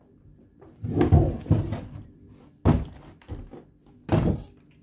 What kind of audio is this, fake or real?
real